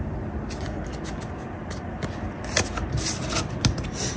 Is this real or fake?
real